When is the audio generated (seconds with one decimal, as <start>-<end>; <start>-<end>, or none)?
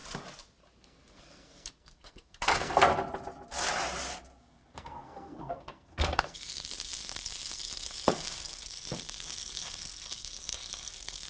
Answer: 0.8-2.9; 4.4-11.3